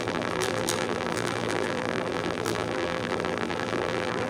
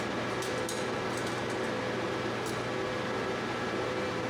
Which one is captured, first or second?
second